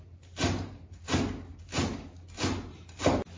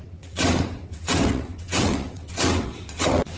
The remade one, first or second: second